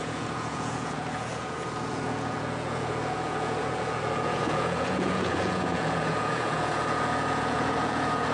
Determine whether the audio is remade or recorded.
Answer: remade